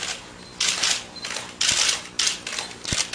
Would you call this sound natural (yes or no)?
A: yes